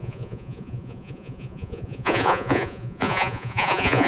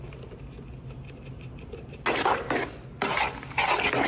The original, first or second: second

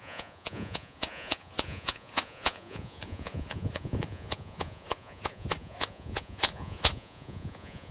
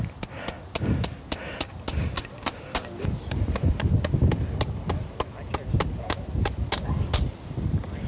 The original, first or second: second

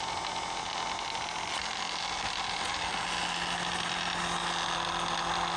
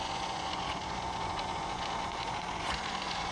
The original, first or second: first